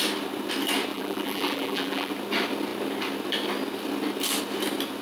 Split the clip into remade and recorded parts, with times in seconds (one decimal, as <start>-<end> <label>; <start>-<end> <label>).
0.0-0.9 recorded; 0.9-2.1 remade; 2.1-5.0 recorded